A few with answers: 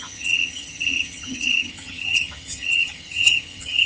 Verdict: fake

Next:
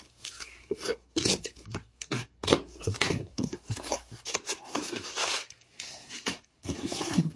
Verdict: fake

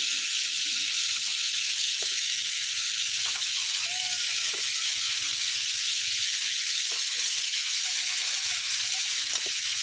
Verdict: fake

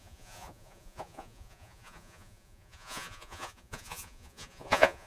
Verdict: fake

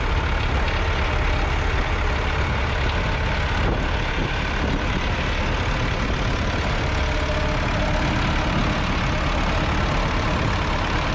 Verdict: real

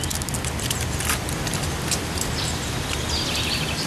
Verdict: real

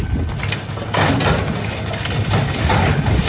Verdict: real